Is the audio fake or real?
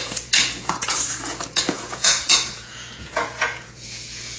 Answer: fake